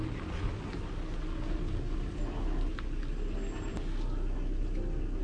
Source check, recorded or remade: recorded